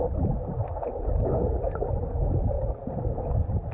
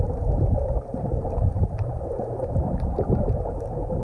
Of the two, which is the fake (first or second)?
second